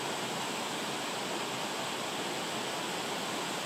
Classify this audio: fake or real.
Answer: real